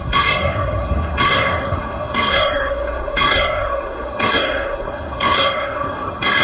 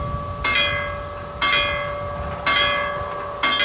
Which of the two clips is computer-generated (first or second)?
first